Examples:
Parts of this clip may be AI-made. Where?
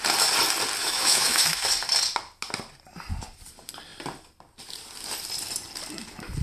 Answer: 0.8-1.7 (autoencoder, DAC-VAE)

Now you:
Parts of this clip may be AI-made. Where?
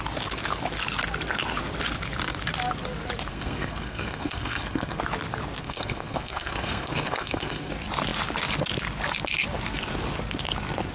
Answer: 3.3-5.0 (codec, SNAC); 5.6-7.7